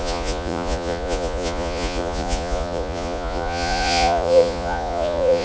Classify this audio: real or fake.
fake